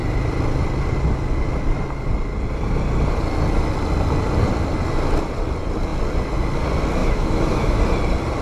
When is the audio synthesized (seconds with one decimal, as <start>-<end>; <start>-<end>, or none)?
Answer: 7.0-7.8